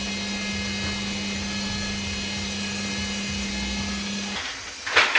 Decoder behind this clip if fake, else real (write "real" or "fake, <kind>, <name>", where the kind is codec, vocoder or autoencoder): real